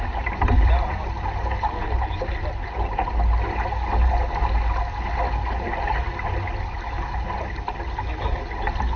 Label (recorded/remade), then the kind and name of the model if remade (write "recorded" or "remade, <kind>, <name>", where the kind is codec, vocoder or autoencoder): recorded